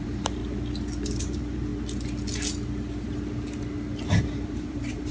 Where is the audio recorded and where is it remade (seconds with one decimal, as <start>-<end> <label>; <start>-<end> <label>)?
0.0-0.4 remade; 0.4-1.2 recorded; 1.2-1.7 remade; 1.7-4.2 recorded; 4.2-5.1 remade